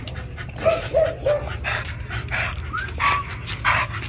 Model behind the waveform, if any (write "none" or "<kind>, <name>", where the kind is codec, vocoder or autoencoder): none